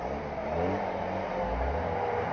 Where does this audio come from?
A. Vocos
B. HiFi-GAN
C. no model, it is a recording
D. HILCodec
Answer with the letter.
C